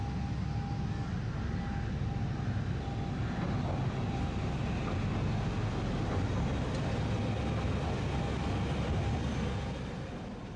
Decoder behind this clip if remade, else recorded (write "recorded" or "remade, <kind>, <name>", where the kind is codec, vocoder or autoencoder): recorded